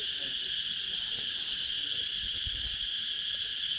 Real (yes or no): no